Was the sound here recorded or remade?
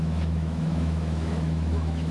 remade